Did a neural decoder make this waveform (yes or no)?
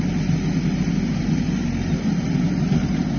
yes